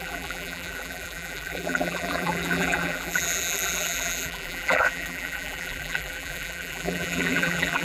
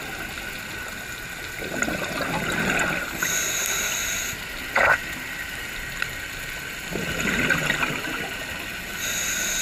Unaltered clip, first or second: second